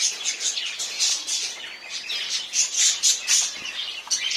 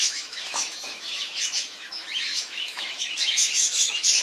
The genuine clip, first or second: first